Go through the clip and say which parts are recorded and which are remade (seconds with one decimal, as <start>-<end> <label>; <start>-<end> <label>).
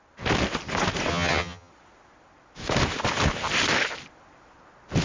0.0-1.1 recorded; 1.1-1.7 remade; 1.7-5.0 recorded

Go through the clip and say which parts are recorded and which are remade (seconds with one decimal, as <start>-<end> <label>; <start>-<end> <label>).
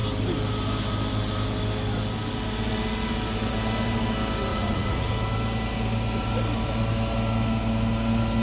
0.0-4.5 recorded; 4.5-5.1 remade; 5.1-8.4 recorded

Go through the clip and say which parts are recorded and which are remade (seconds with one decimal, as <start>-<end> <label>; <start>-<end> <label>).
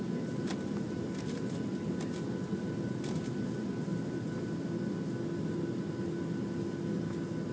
0.0-7.5 recorded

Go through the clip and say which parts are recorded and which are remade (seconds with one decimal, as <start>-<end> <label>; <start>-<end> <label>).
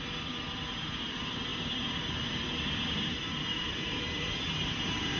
0.0-5.2 remade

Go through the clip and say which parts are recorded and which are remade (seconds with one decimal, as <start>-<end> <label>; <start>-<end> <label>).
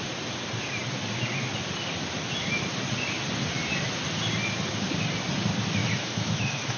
0.0-5.8 recorded; 5.8-6.8 remade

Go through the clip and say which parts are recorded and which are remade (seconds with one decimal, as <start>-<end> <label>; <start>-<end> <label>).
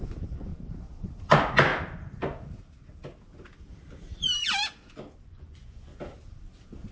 0.0-0.5 remade; 0.5-1.2 recorded; 1.2-1.7 remade; 1.7-5.2 recorded; 5.2-5.9 remade; 5.9-6.9 recorded